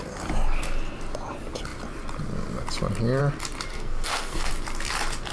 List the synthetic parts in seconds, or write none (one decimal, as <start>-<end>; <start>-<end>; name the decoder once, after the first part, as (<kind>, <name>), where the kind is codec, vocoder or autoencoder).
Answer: 3.7-4.5 (codec, SNAC)